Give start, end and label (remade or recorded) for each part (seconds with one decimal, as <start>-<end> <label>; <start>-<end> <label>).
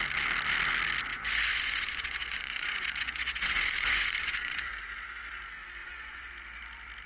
0.0-1.1 recorded; 1.1-4.8 remade; 4.8-5.8 recorded; 5.8-6.3 remade; 6.3-7.1 recorded